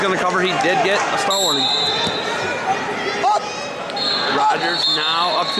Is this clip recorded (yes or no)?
yes